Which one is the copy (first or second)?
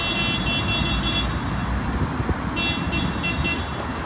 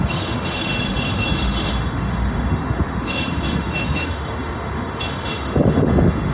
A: second